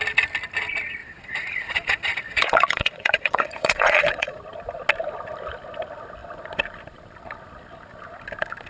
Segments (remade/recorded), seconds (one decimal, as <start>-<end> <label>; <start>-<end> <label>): 0.0-1.0 recorded; 1.0-4.4 remade; 4.4-8.7 recorded